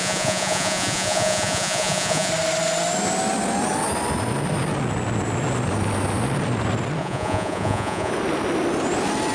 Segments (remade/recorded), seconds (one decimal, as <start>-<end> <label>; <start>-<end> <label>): 0.0-2.3 remade; 2.3-7.0 recorded; 7.0-8.1 remade; 8.1-9.3 recorded